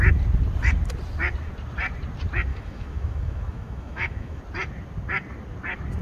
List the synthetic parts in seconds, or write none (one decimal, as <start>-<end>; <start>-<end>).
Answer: 2.5-4.4